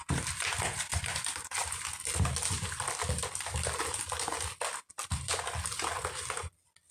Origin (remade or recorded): recorded